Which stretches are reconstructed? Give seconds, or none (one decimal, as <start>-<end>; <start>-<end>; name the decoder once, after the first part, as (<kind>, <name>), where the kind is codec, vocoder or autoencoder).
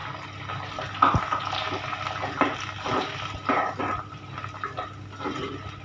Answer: none